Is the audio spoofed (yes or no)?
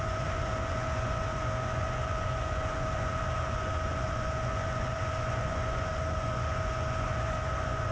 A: yes